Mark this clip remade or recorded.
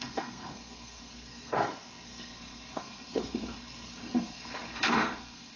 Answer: remade